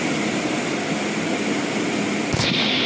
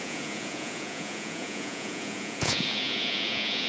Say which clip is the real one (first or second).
first